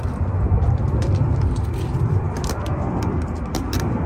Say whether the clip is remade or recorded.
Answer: remade